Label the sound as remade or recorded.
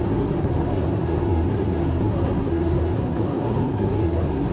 remade